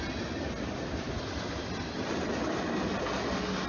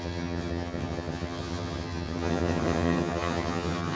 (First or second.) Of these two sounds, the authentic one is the first